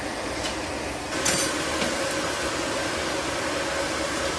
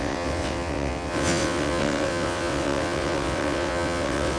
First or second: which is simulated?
second